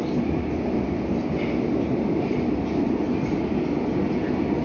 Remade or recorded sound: recorded